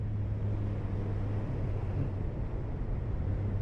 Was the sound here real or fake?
real